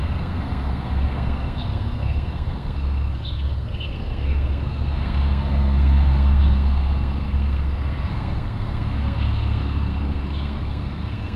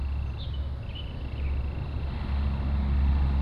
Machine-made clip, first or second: first